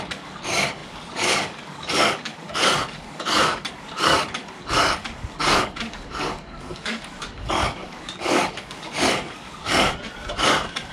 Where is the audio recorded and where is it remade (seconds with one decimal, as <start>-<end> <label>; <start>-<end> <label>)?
0.0-10.9 remade